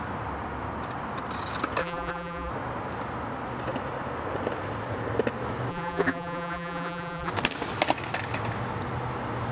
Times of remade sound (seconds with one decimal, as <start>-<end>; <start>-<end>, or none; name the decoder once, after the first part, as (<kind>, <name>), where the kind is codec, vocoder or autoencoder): 1.8-2.5 (vocoder, BigVGAN v2); 5.7-7.3

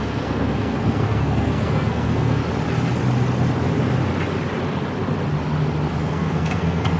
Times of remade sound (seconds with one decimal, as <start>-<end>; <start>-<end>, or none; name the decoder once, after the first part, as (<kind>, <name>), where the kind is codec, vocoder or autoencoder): 0.0-2.4 (codec, SNAC); 6.0-7.0

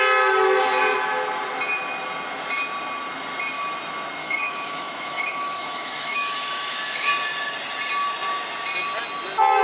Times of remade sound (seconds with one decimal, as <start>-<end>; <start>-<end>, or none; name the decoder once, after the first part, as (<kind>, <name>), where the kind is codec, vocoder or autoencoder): 4.2-7.1 (autoencoder, DAC-VAE)